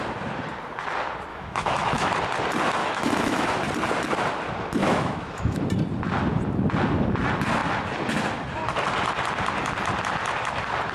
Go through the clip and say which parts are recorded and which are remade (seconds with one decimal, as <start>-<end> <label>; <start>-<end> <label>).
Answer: 0.0-1.3 recorded; 1.3-2.1 remade; 2.1-2.8 recorded; 2.8-3.5 remade; 3.5-4.8 recorded; 4.8-5.6 remade; 5.6-10.9 recorded